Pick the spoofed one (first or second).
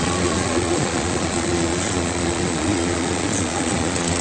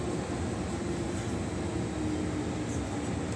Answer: first